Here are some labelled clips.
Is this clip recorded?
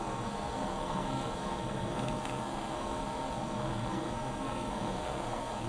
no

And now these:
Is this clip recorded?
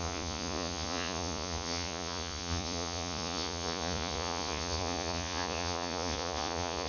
no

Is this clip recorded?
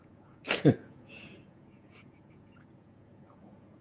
no